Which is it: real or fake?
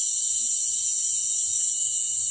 fake